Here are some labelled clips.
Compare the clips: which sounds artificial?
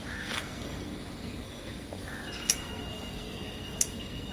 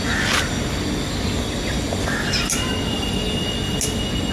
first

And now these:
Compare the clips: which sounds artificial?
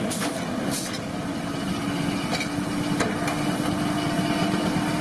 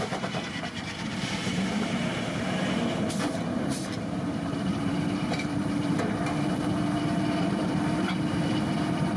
second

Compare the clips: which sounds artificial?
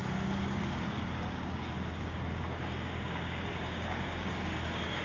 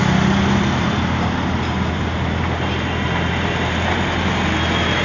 first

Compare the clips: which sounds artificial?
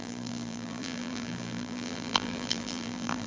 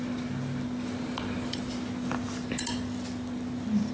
first